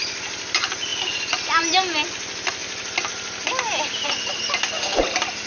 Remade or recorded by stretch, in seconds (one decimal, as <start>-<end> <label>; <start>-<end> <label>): 0.0-2.6 recorded; 2.6-4.5 remade; 4.5-5.5 recorded